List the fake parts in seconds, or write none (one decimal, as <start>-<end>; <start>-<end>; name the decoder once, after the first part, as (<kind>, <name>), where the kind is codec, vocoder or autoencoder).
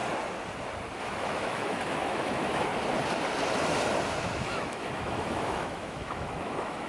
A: 1.0-2.7 (autoencoder, DAC-VAE); 4.2-6.9